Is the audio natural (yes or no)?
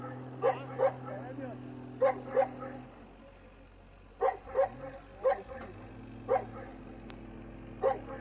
yes